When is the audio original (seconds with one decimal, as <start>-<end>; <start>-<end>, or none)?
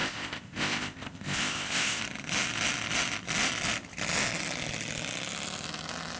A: 2.0-6.2